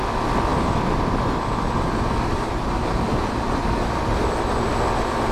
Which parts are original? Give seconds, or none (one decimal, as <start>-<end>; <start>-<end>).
0.0-0.5; 3.0-5.3